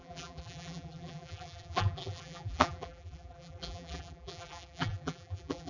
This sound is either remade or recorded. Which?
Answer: remade